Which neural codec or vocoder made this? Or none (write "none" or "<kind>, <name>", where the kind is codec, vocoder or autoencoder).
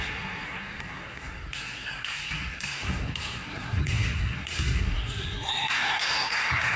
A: codec, SNAC